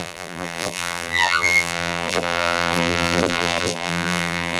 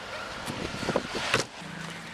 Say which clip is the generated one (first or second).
first